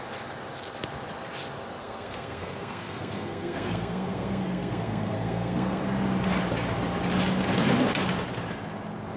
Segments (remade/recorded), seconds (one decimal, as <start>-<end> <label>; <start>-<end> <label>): 0.0-1.8 recorded; 1.8-5.8 remade; 5.8-9.2 recorded